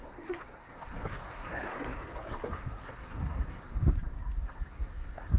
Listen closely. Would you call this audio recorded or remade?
remade